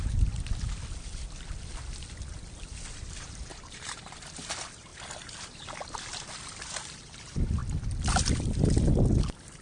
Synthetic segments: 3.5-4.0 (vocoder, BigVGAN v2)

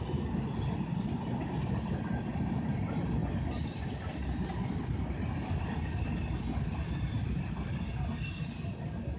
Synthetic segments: none